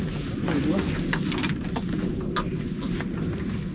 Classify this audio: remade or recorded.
recorded